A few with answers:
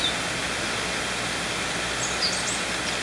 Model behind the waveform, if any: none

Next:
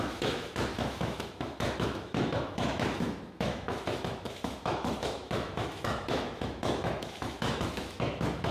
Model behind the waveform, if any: autoencoder, DAC-VAE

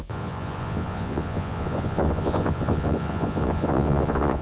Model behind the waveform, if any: vocoder, Vocos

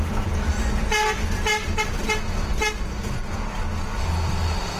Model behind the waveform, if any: none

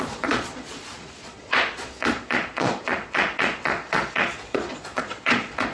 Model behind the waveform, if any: vocoder, Vocos